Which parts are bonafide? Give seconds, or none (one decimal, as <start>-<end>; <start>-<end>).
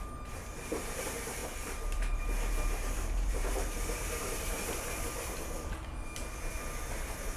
0.0-1.4; 5.0-7.4